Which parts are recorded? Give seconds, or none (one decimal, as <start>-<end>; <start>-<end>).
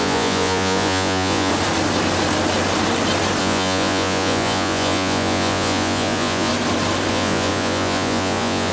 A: 1.5-3.4; 6.5-7.1